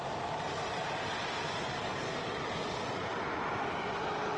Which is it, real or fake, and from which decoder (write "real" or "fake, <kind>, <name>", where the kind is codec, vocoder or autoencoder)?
real